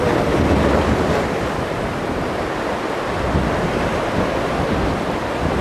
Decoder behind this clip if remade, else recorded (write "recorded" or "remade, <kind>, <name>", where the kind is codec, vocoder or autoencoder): remade, vocoder, BigVGAN v2